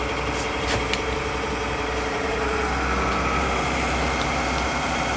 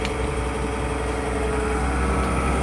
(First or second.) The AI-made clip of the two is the first